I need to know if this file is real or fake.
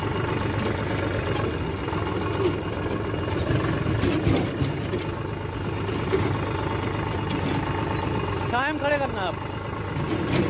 real